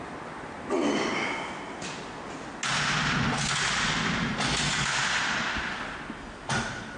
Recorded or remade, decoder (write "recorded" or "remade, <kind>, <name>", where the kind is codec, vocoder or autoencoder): recorded